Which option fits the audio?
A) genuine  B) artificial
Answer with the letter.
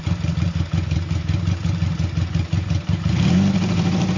B